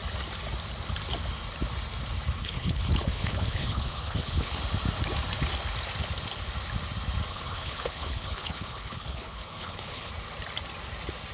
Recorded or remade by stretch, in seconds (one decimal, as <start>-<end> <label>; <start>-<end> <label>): 0.0-2.4 recorded; 2.4-4.6 remade; 4.6-7.3 recorded; 7.3-10.1 remade; 10.1-11.3 recorded